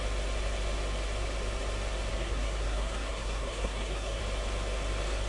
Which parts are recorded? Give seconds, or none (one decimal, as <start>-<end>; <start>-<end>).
0.0-2.1; 4.2-5.3